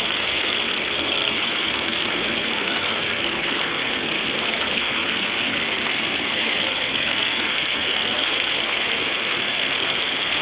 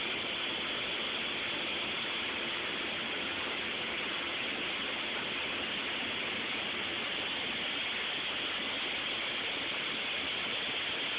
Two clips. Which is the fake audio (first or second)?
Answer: first